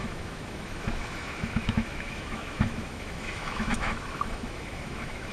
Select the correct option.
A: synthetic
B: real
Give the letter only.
A